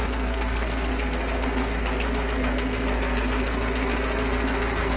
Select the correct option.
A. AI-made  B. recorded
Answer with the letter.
A